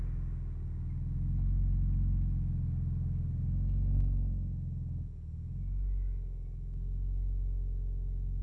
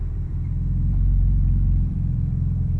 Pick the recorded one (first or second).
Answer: first